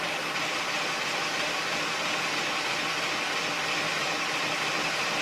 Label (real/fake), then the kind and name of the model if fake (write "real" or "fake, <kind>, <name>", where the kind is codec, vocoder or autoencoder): real